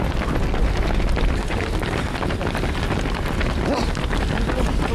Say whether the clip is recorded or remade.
recorded